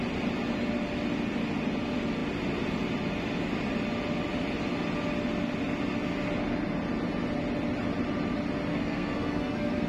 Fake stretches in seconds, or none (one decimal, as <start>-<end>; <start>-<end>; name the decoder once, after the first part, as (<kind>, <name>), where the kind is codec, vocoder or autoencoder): 8.7-9.9 (codec, SNAC)